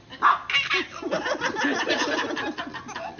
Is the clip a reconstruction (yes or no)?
no